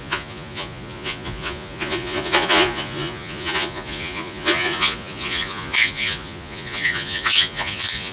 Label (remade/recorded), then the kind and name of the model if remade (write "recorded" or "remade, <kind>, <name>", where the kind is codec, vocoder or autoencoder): remade, vocoder, Vocos